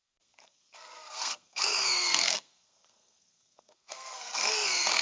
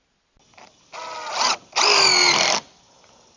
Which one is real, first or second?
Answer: second